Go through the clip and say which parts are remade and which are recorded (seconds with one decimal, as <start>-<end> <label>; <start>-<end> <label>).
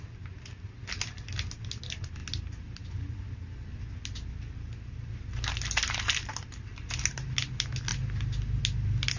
0.0-9.2 recorded